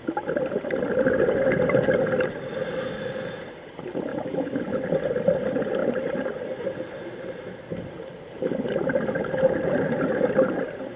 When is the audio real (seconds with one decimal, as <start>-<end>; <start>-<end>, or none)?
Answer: 0.0-4.1; 4.6-11.0